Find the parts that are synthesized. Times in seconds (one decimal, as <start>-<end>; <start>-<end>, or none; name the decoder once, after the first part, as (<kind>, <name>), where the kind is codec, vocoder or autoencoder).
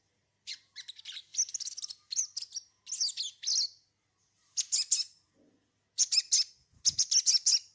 none